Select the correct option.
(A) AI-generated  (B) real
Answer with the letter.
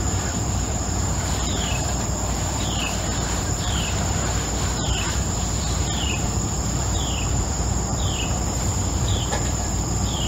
A